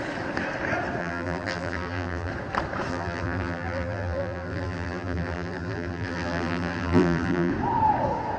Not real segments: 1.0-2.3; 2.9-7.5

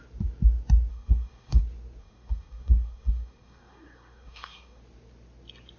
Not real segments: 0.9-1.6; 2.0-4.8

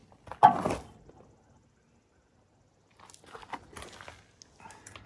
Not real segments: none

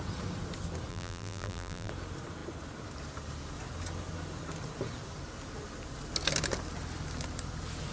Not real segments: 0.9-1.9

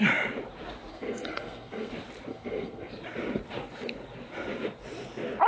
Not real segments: 0.9-1.9; 2.3-2.9